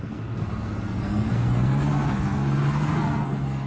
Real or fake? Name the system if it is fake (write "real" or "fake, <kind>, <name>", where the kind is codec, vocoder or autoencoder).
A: fake, codec, SNAC